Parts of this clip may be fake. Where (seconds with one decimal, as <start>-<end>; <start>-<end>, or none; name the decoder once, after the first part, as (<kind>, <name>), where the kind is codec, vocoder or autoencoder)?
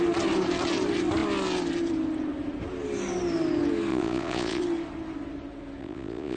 3.9-4.6 (vocoder, Vocos); 5.8-6.4